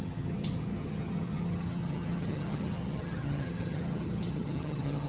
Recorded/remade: remade